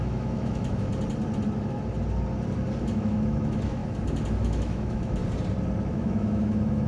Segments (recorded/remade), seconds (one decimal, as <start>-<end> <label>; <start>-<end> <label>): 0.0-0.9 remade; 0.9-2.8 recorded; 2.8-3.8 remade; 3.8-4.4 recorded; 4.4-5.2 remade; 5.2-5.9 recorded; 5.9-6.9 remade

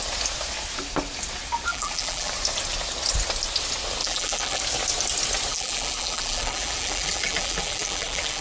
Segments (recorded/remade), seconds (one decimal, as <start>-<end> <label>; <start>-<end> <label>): 0.0-1.7 recorded; 1.7-2.3 remade; 2.3-4.0 recorded; 4.0-4.6 remade; 4.6-5.5 recorded; 5.5-8.4 remade

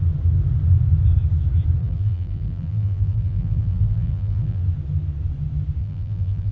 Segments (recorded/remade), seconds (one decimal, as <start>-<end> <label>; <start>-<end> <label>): 0.0-1.8 recorded; 1.8-4.6 remade; 4.6-5.8 recorded; 5.8-6.5 remade